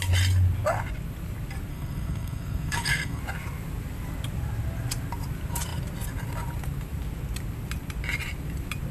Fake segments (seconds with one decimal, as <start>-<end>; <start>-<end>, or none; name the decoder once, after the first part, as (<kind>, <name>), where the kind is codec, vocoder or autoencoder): 1.7-3.2 (codec, SNAC)